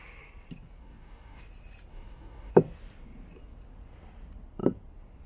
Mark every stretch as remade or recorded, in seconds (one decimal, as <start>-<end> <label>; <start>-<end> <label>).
0.0-0.8 recorded; 0.8-1.4 remade; 1.4-1.9 recorded; 1.9-2.5 remade; 2.5-5.3 recorded